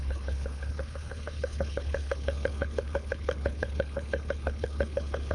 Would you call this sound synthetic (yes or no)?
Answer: yes